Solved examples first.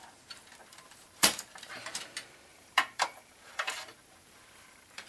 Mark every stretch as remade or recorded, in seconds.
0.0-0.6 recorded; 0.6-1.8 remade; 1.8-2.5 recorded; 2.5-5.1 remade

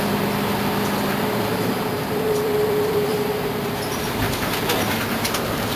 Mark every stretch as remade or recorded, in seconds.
0.0-1.1 recorded; 1.1-4.2 remade; 4.2-5.8 recorded

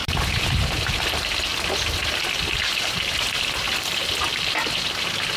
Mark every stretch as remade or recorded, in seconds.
0.0-1.5 remade; 1.5-2.8 recorded; 2.8-4.0 remade; 4.0-5.4 recorded

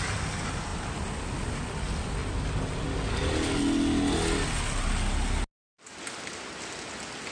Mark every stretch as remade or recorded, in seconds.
0.0-0.7 recorded; 0.7-1.2 remade; 1.2-7.3 recorded

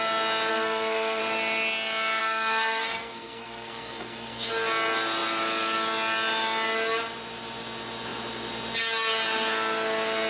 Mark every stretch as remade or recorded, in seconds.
0.0-0.5 recorded; 0.5-1.2 remade; 1.2-2.2 recorded; 2.2-4.5 remade; 4.5-10.3 recorded

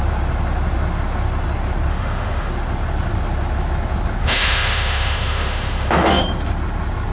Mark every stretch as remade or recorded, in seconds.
0.0-1.9 recorded; 1.9-2.5 remade; 2.5-4.2 recorded; 4.2-6.2 remade; 6.2-7.1 recorded